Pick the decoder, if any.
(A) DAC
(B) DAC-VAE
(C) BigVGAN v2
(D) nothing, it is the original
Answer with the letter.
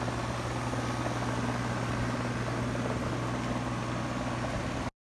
D